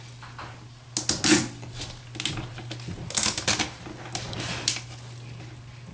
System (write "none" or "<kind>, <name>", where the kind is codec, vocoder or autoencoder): none